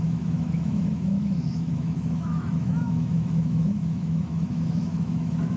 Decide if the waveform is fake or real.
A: fake